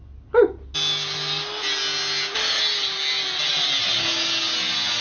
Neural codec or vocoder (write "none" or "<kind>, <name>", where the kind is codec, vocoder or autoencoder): none